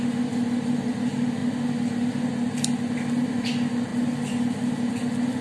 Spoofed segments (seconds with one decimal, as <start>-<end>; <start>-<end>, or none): none